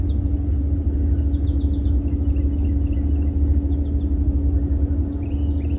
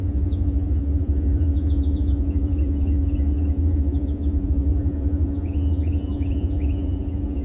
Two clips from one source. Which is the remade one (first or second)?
second